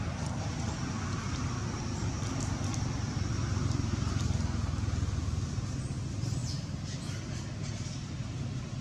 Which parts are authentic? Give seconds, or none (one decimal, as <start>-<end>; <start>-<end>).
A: 0.0-8.8